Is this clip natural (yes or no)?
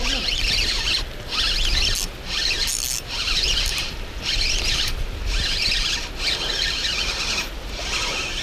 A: yes